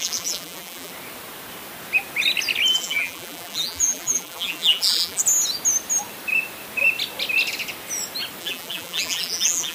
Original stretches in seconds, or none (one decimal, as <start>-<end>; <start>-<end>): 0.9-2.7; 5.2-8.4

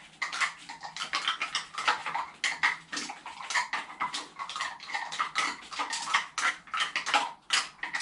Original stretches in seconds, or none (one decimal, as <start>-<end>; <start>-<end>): 0.0-8.0

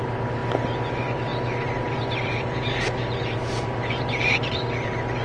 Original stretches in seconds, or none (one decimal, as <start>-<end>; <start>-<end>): 0.4-0.9

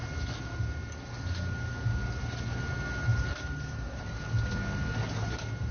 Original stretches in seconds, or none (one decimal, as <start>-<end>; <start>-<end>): 0.0-3.1; 4.2-5.7